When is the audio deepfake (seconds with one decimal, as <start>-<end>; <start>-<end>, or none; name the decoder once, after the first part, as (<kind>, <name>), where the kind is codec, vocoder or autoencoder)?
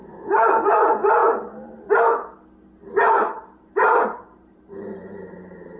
0.0-0.5 (vocoder, BigVGAN v2); 1.2-2.1; 2.8-5.3